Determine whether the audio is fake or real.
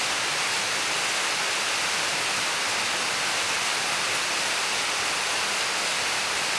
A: real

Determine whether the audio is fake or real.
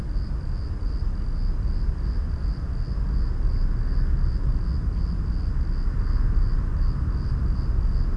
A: real